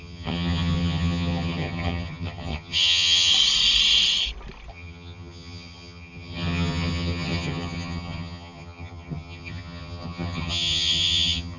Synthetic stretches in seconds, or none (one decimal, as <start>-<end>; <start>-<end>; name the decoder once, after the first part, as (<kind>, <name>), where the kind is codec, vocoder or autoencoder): 0.0-3.3 (vocoder, HiFi-GAN); 4.7-11.6